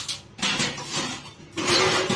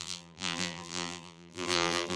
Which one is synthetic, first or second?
second